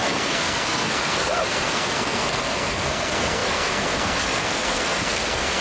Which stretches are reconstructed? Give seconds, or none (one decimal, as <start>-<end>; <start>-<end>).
0.0-5.6